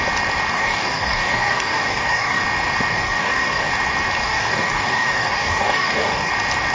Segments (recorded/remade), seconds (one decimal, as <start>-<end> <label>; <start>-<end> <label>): 0.0-0.5 recorded; 0.5-2.4 remade; 2.4-2.9 recorded; 2.9-3.7 remade; 3.7-4.2 recorded; 4.2-6.3 remade; 6.3-6.7 recorded